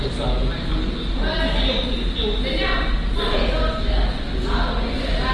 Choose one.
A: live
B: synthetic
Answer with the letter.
A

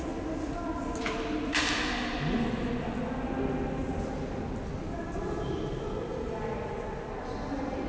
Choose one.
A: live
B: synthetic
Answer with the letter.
A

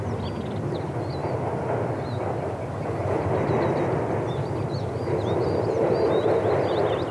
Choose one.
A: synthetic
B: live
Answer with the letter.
B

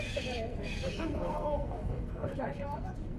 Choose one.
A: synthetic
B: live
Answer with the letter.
A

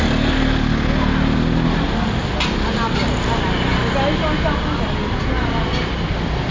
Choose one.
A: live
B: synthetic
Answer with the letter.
A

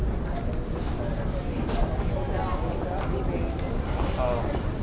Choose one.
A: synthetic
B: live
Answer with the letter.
B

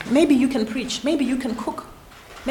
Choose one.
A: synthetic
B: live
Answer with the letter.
B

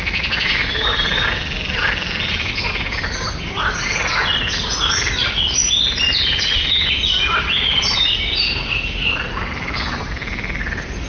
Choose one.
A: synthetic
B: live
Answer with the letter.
B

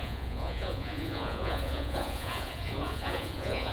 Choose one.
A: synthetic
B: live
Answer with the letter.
A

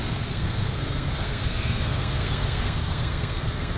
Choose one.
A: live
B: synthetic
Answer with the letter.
B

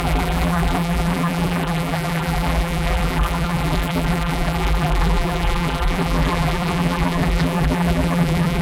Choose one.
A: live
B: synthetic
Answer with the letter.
B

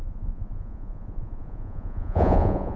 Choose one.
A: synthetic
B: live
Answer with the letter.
A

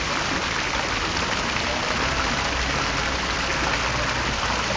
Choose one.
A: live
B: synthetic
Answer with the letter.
A